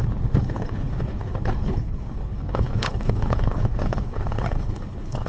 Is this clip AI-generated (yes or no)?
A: yes